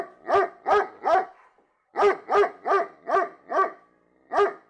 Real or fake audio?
real